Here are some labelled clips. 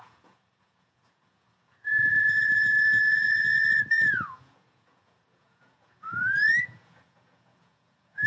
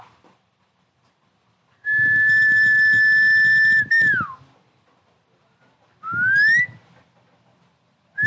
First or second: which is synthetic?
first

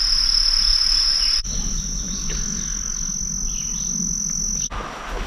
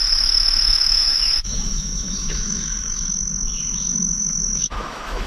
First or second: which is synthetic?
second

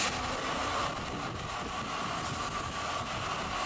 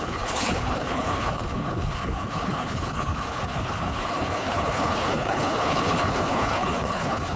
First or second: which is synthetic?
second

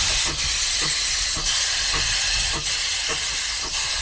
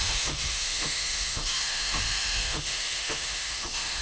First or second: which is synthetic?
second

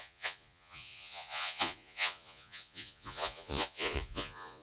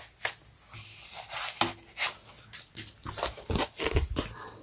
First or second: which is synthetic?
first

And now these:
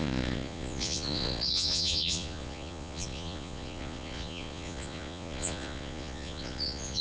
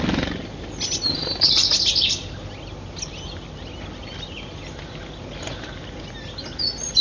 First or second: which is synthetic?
first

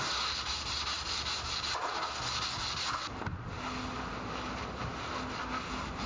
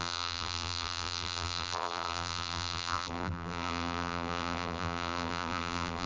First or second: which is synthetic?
second